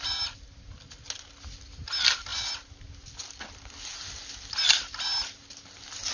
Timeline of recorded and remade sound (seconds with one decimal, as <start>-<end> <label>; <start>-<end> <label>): 0.0-6.1 recorded